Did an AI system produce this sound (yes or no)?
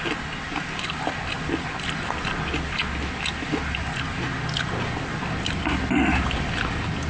no